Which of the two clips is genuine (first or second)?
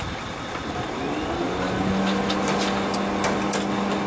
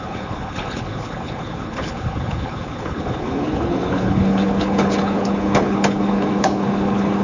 first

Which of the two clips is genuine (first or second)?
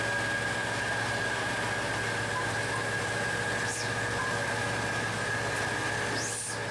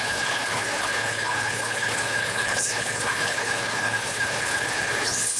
first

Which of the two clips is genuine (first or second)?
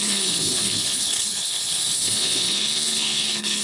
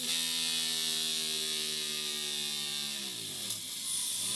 second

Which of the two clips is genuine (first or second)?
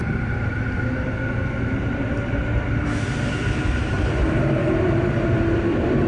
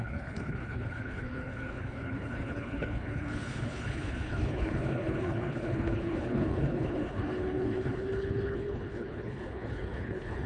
first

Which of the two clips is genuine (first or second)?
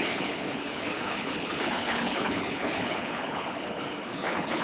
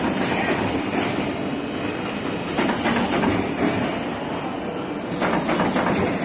second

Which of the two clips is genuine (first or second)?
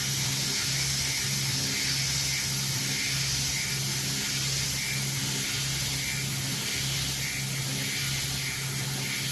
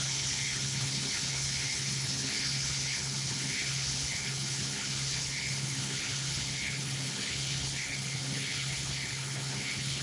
first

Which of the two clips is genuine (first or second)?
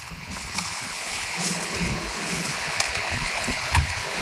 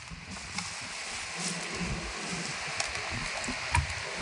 second